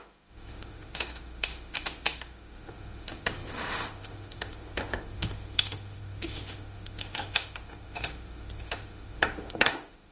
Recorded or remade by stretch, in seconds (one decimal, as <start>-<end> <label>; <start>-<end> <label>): 0.0-10.1 remade